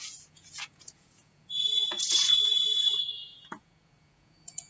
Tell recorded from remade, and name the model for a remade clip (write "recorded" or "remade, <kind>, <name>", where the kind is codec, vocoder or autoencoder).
remade, vocoder, Vocos